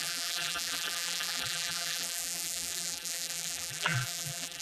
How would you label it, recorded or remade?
remade